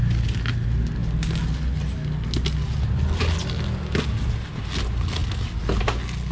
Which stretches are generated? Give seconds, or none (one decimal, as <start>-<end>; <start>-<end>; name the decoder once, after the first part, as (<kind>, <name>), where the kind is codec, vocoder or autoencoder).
none